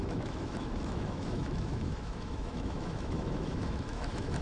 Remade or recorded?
remade